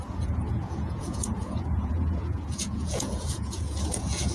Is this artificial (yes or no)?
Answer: yes